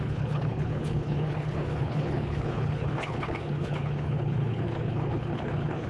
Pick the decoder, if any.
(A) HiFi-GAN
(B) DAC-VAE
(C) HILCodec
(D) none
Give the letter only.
C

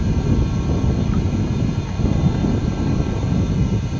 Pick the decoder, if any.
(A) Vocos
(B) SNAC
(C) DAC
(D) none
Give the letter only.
D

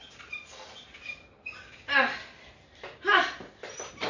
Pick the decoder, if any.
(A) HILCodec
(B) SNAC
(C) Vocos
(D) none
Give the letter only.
D